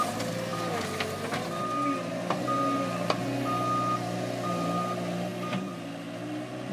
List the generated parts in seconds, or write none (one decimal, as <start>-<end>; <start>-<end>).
none